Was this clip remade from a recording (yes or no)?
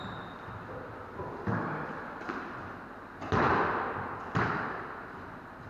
no